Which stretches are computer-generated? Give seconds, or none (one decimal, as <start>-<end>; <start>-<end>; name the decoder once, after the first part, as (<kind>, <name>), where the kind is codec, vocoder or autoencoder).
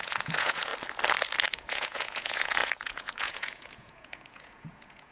0.0-0.7 (vocoder, Vocos); 1.5-5.1